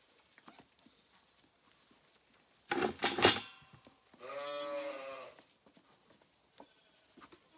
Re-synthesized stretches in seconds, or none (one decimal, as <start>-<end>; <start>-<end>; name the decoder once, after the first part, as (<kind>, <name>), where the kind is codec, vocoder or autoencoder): none